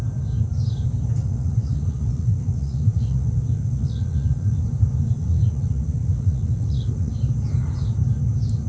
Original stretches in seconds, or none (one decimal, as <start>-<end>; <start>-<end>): 0.0-1.2; 4.6-5.2; 7.1-8.7